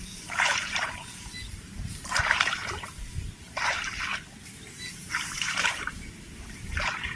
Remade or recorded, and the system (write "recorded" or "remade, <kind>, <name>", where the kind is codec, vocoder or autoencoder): remade, vocoder, BigVGAN v2